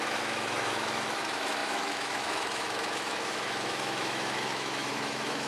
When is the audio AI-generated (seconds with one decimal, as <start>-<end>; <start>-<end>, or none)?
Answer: 0.0-5.5